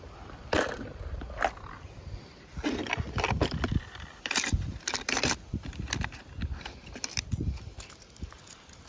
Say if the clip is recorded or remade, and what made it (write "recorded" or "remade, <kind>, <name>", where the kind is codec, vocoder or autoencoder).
recorded